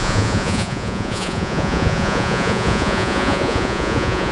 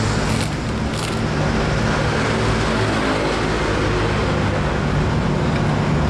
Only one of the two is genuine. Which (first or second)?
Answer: second